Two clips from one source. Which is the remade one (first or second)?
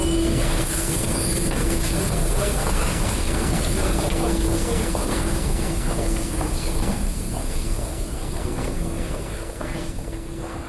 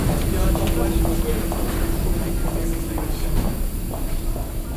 first